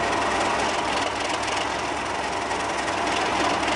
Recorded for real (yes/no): yes